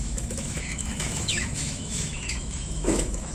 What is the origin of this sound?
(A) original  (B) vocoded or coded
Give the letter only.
B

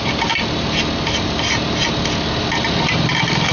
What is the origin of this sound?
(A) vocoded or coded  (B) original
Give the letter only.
B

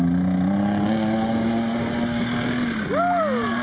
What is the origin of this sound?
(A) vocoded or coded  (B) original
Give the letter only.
B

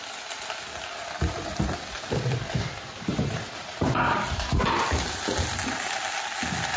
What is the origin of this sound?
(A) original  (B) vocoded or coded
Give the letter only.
A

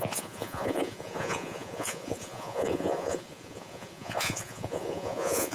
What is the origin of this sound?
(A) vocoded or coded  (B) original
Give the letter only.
A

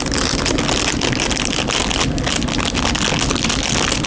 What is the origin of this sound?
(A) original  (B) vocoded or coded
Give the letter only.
A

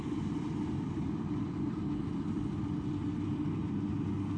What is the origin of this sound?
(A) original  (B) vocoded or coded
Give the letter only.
A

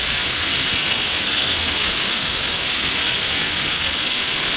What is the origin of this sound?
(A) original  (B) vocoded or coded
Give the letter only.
B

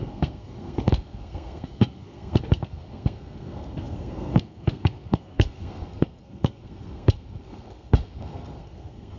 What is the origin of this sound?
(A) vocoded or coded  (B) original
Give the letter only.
A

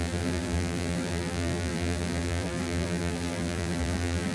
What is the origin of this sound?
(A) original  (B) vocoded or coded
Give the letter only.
B